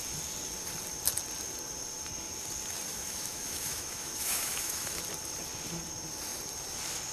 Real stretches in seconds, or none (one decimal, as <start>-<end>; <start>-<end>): 0.0-2.9; 4.9-7.1